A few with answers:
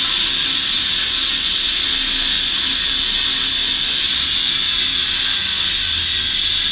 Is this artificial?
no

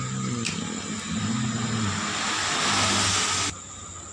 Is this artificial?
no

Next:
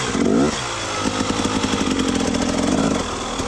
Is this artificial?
no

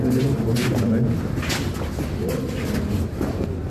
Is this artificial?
no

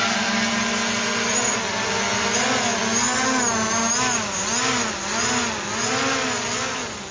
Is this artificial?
no